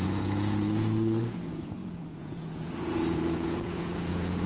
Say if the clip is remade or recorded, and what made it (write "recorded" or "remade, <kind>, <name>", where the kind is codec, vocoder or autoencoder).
remade, vocoder, Vocos